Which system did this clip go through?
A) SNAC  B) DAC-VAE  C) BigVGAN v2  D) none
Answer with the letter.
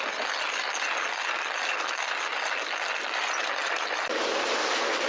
D